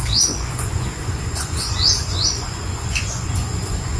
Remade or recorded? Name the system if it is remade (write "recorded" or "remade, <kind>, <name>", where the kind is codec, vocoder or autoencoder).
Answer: remade, vocoder, Vocos